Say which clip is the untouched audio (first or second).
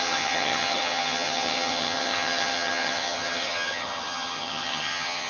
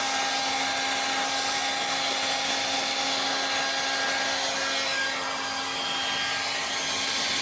second